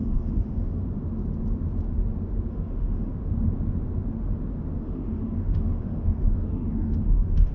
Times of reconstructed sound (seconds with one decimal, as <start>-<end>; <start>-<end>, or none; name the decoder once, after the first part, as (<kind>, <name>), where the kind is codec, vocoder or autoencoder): 0.0-0.8 (autoencoder, DAC-VAE); 2.5-3.1; 4.8-7.5